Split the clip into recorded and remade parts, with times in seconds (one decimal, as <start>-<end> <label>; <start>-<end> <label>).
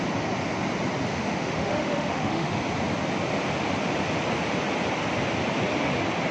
0.0-1.1 recorded; 1.1-2.6 remade; 2.6-6.3 recorded